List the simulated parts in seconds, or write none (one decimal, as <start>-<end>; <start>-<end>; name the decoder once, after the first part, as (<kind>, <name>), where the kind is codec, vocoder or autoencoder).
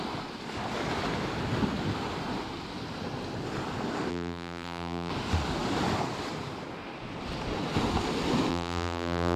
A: 4.1-5.1 (vocoder, BigVGAN v2); 8.5-9.4